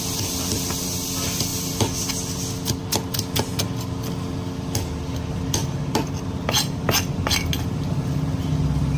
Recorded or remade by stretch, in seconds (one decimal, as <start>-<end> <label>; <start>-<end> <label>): 0.0-1.5 recorded; 1.5-2.1 remade; 2.1-9.0 recorded